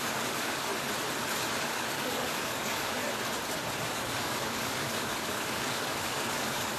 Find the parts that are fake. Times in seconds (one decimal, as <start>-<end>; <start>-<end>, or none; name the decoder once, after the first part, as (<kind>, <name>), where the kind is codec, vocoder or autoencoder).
0.0-0.7 (codec, DAC); 1.6-3.0; 3.8-6.8